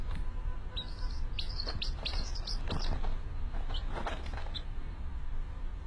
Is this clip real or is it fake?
real